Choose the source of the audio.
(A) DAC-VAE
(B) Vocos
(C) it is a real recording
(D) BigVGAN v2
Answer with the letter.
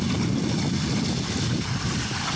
C